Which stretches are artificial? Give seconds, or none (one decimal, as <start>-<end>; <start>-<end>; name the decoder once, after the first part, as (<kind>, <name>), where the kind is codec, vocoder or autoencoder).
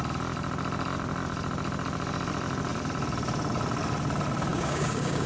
4.5-5.3 (codec, DAC)